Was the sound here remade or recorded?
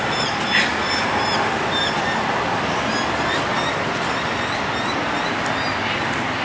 recorded